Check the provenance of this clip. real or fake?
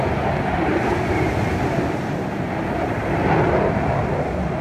real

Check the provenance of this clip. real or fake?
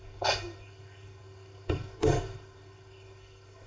fake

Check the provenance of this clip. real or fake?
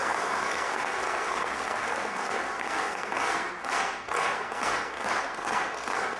fake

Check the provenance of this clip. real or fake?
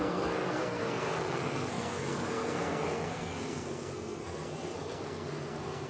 fake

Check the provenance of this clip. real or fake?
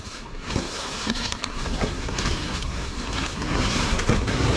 fake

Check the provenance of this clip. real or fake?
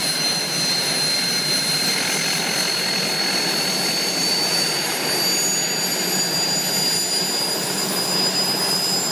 real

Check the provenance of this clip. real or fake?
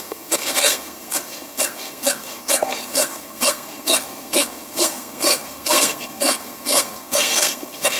fake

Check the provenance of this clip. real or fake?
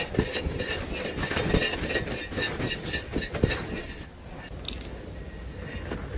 real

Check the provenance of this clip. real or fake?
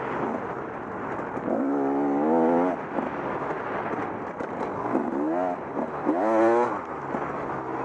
real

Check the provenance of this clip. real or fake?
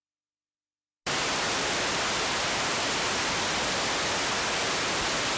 real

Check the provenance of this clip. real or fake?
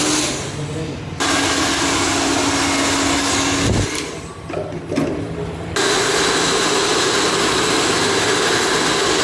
real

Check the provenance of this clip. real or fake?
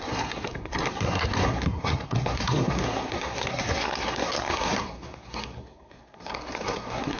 fake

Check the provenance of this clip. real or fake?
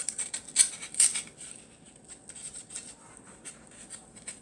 real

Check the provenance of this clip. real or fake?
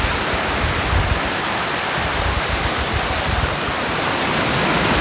real